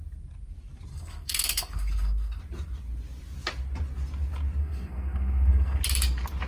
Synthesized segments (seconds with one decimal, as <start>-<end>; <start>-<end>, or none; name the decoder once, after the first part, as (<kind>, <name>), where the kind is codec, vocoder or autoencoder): 0.9-2.4 (codec, SNAC); 4.6-5.8